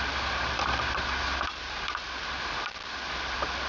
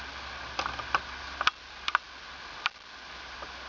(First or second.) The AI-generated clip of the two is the first